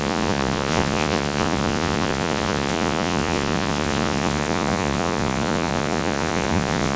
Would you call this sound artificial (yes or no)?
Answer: yes